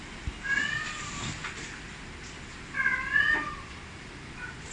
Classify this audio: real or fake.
real